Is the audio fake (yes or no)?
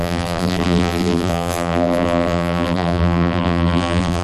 yes